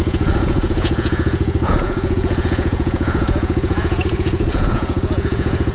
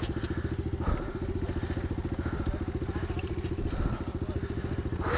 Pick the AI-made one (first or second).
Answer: first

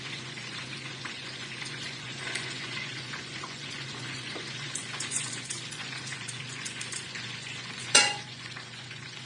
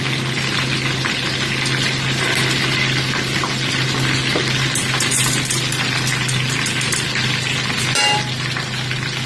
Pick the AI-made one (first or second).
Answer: first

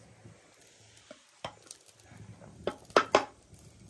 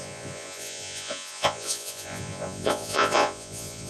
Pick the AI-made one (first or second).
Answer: second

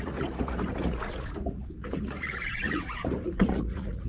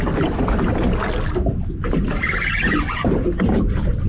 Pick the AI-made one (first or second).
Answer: first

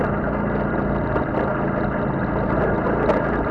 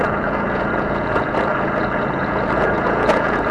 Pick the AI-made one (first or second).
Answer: second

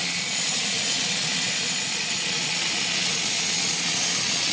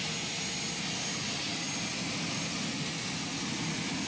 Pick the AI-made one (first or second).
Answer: first